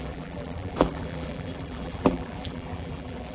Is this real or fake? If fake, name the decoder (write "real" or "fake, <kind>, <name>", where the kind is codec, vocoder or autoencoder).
fake, vocoder, BigVGAN v2